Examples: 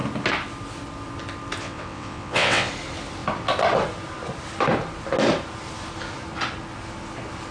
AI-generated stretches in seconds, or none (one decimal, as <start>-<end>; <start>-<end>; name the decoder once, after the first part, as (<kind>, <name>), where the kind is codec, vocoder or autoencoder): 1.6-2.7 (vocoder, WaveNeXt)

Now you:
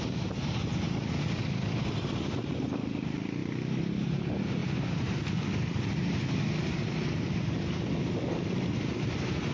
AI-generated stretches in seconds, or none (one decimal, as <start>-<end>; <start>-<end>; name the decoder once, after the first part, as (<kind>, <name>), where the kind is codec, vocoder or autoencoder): none

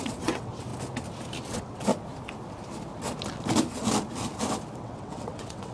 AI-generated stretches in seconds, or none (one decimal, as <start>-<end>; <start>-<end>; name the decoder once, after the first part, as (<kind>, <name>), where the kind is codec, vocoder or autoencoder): 0.0-0.7 (vocoder, WaveNeXt); 1.4-1.9; 4.8-5.7